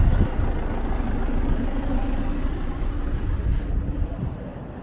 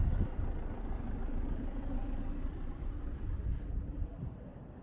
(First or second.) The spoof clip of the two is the second